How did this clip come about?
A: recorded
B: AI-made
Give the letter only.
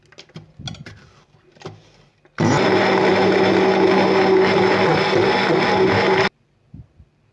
A